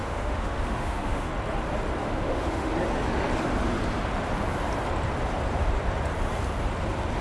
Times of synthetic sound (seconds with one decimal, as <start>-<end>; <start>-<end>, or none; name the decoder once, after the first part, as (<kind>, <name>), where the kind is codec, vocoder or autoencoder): 0.0-1.3 (autoencoder, DAC-VAE); 2.0-2.7